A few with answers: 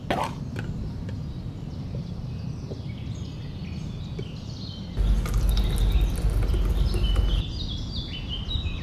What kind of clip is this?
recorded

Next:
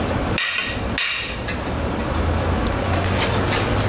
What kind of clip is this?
recorded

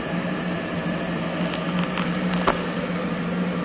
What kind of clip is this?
recorded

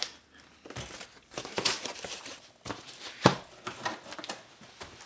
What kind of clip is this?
recorded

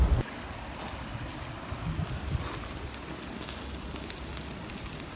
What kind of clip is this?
recorded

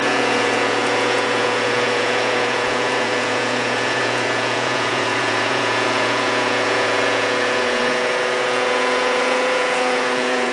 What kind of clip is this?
remade